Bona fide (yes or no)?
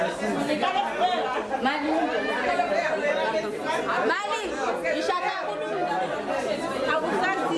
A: yes